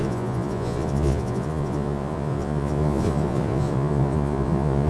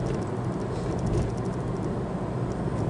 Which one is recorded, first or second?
second